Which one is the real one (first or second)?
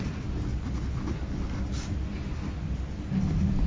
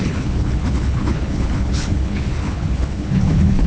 first